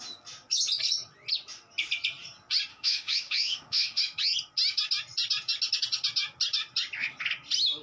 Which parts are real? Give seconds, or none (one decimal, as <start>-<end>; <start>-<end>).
0.0-2.7; 4.0-7.8